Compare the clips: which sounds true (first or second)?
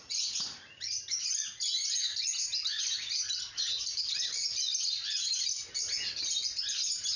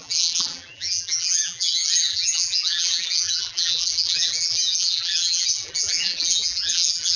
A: first